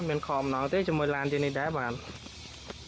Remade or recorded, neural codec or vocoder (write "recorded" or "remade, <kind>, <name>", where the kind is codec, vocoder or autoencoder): recorded